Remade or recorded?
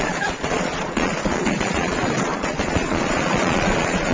remade